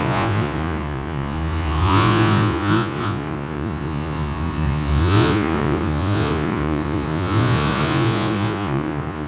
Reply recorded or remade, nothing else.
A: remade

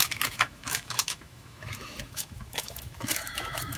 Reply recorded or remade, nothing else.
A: remade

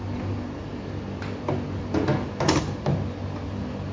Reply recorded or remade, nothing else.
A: recorded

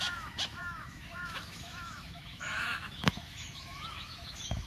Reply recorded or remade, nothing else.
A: remade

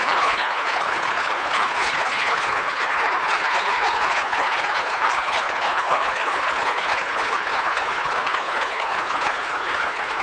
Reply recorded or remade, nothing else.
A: remade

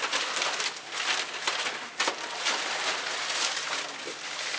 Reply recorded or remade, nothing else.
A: recorded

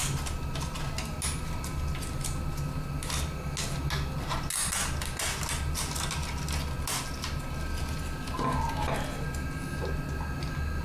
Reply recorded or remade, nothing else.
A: recorded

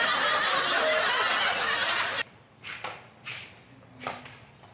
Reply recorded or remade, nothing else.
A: recorded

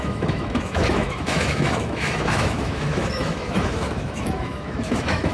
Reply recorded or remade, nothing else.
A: remade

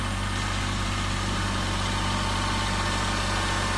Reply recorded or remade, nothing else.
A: remade